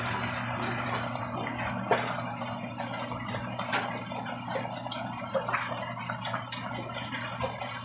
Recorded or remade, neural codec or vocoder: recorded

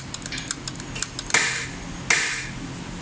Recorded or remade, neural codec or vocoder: recorded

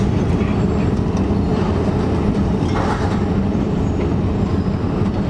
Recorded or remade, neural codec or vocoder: recorded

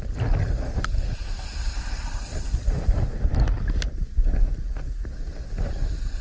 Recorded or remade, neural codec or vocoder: recorded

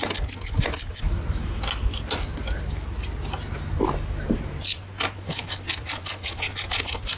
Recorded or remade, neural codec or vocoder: recorded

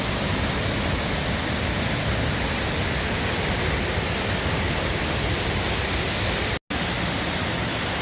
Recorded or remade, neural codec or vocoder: recorded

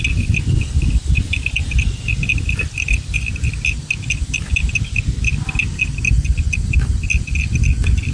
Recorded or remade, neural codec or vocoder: recorded